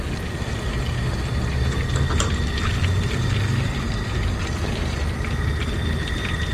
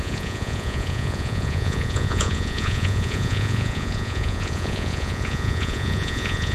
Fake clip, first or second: second